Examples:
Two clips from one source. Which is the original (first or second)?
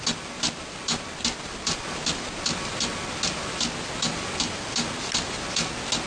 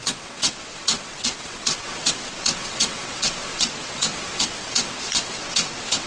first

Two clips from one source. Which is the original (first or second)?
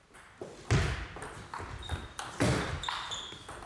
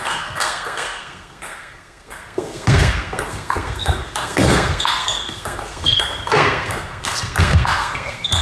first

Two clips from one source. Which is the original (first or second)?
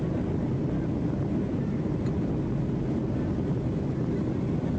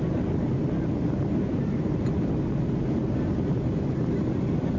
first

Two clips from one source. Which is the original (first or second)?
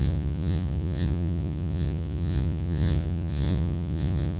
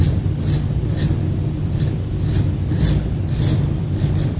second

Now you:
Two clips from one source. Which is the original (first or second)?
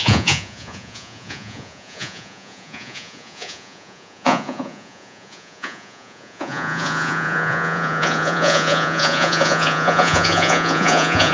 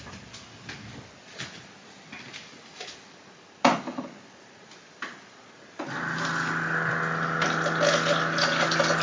second